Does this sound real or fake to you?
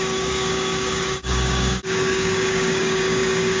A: fake